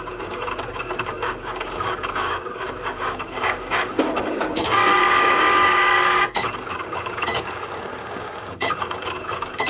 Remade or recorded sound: remade